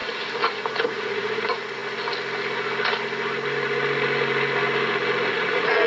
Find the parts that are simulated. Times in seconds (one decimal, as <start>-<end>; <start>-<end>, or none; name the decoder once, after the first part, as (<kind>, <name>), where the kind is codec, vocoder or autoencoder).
0.5-1.8 (vocoder, Vocos); 5.3-5.9